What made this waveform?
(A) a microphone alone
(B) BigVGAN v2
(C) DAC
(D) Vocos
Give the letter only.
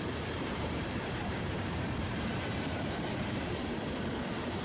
B